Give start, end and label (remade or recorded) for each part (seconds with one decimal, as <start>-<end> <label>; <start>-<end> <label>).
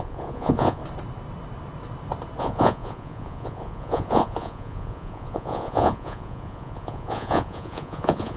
0.0-0.8 remade; 0.8-2.4 recorded; 2.4-8.4 remade